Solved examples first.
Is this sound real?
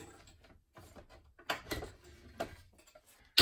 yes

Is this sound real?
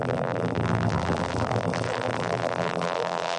no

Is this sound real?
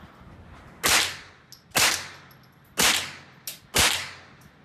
yes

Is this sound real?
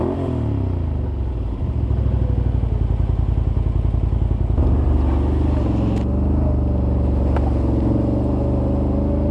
yes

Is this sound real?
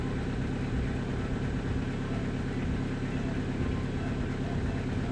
yes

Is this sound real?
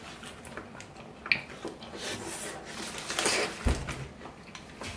yes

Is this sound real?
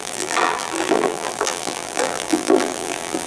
no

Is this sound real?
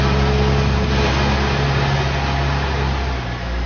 yes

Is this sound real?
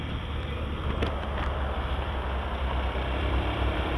no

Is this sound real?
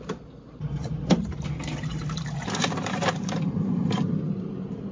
no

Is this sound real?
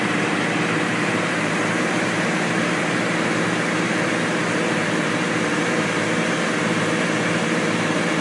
no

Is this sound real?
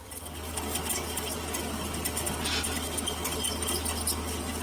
no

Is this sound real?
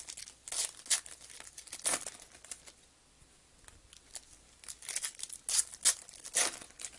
yes